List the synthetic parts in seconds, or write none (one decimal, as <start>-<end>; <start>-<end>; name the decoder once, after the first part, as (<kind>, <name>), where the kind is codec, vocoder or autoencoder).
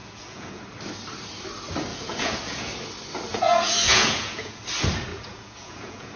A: 0.0-0.6 (vocoder, Vocos); 1.9-2.7; 3.3-4.6; 5.1-6.2